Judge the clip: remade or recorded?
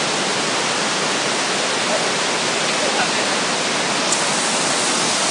recorded